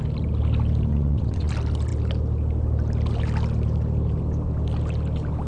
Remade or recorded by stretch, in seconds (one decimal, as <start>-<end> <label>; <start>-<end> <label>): 0.0-0.9 recorded; 0.9-1.5 remade; 1.5-5.5 recorded